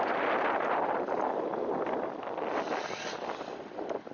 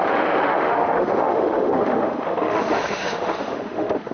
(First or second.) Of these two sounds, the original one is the first